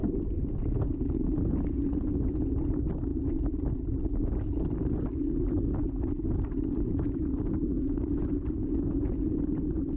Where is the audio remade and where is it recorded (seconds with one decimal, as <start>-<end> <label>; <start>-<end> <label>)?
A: 0.0-7.6 recorded; 7.6-8.3 remade; 8.3-10.0 recorded